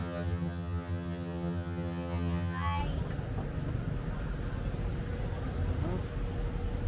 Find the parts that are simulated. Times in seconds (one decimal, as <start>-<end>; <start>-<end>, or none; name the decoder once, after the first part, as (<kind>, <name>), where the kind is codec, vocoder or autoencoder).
0.0-2.8 (vocoder, HiFi-GAN)